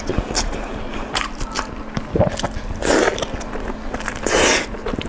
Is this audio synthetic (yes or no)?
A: no